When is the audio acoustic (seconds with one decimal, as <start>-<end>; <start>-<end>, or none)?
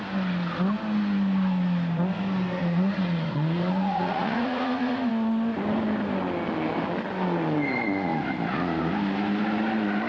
0.0-2.6; 5.1-10.1